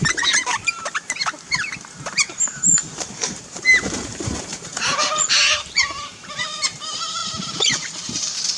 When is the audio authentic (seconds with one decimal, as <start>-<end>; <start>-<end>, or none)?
0.5-2.4